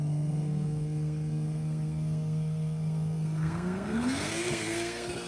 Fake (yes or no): yes